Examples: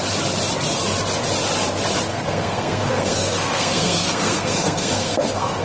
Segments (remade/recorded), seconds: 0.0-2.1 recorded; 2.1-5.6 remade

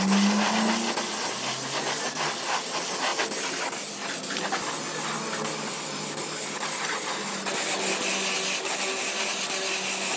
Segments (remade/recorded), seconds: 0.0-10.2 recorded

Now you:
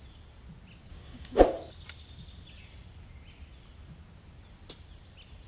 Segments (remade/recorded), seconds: 0.0-0.9 recorded; 0.9-1.4 remade; 1.4-5.5 recorded